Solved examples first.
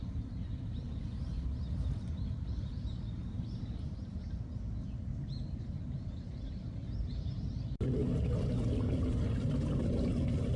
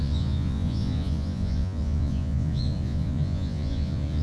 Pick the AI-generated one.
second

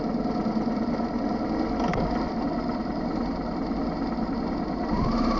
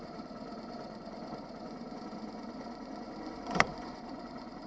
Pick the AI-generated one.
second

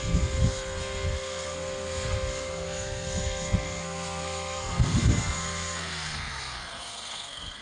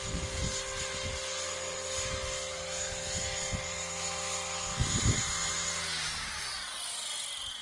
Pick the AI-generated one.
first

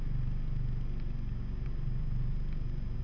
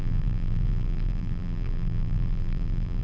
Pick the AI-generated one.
second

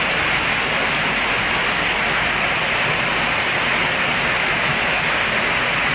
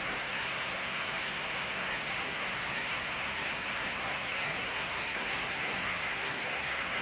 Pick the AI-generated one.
second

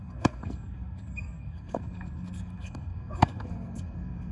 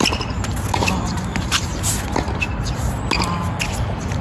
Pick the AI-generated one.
first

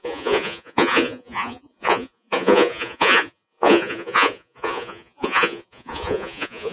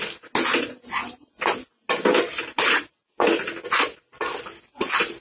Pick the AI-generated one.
first